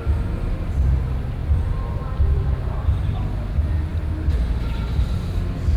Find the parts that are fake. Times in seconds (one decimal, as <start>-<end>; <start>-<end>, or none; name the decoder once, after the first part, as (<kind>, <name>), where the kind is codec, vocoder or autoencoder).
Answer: 1.4-2.6 (vocoder, BigVGAN v2)